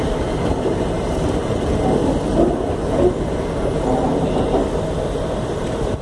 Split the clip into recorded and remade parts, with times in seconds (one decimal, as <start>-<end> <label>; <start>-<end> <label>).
0.0-1.4 remade; 1.4-3.3 recorded; 3.3-4.1 remade; 4.1-5.2 recorded; 5.2-6.0 remade